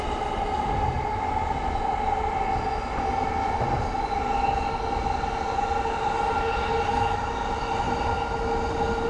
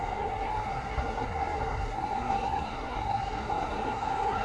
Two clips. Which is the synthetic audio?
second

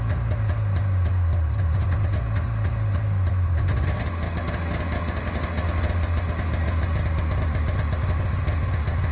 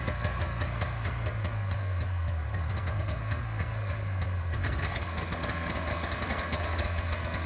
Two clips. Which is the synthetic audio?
second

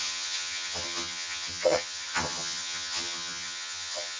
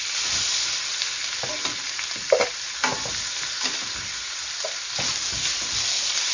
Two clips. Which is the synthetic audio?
first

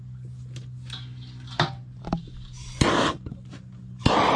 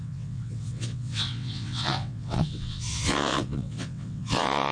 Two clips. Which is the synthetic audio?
second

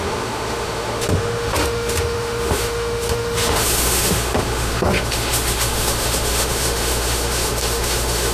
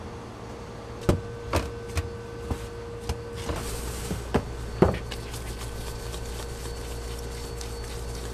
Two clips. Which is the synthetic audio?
first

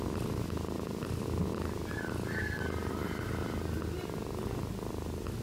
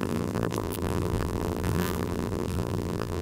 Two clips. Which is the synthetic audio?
second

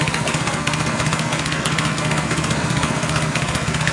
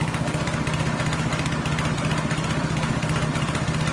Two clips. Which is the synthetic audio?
first